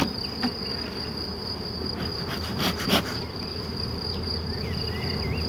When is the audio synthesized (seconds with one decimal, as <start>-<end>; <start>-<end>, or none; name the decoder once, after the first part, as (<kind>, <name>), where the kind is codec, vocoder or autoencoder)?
2.1-5.5 (vocoder, BigVGAN v2)